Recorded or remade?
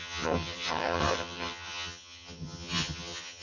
remade